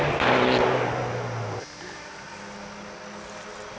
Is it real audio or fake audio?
real